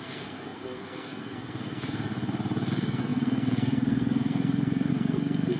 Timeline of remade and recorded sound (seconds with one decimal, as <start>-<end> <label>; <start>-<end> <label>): 0.0-2.1 remade; 2.1-2.7 recorded; 2.7-5.6 remade